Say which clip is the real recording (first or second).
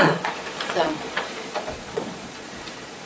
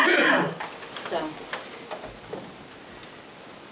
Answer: second